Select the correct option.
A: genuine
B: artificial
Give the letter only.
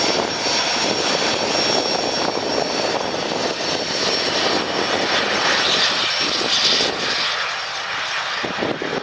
A